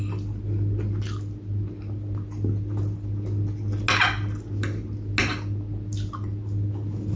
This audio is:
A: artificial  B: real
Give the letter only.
B